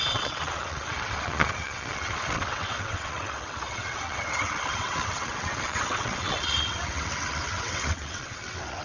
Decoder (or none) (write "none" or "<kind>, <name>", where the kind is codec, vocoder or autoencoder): vocoder, WaveNeXt